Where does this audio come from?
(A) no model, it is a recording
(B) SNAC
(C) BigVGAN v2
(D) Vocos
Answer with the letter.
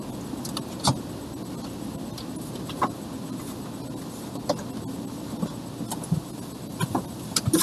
A